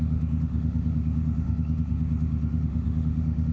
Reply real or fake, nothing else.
fake